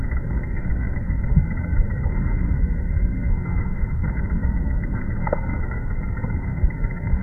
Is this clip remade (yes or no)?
yes